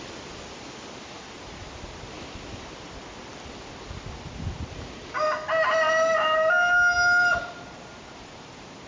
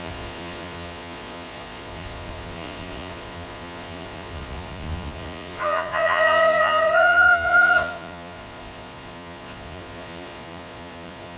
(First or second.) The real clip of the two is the first